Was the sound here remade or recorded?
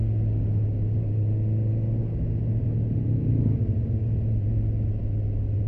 recorded